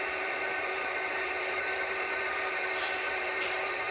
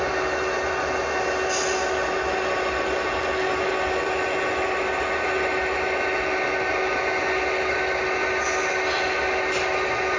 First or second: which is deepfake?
first